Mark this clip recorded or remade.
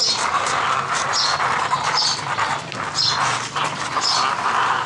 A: recorded